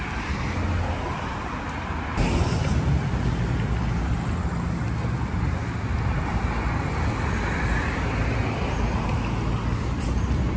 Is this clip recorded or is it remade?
recorded